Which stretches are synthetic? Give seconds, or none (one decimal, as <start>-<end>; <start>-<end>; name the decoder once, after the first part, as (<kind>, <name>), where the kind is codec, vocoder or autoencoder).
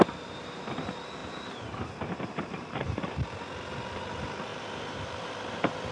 1.2-3.3 (vocoder, BigVGAN v2); 4.5-5.3